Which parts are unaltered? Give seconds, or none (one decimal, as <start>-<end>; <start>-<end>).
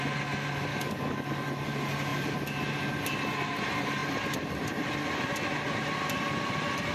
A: 0.0-0.7; 1.5-6.9